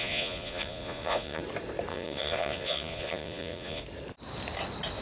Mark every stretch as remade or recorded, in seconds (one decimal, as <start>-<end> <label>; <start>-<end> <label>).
0.0-1.4 remade; 1.4-1.9 recorded; 1.9-3.8 remade; 3.8-5.0 recorded